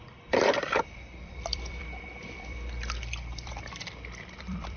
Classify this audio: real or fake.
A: fake